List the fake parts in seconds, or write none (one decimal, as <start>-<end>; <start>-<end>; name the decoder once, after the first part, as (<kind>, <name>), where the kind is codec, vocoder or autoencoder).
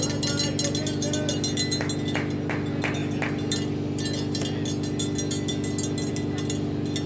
none